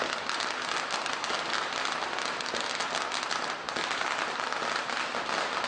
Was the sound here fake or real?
real